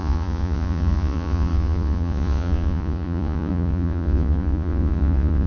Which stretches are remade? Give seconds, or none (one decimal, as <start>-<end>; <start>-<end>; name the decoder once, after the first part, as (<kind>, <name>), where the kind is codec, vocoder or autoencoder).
0.0-5.5 (vocoder, Vocos)